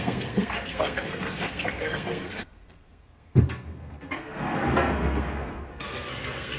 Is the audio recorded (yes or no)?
no